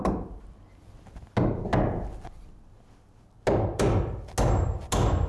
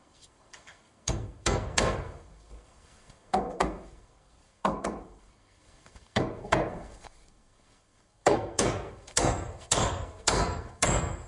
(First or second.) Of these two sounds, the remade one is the second